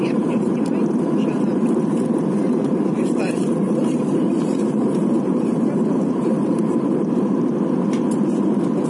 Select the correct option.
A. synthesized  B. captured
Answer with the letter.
A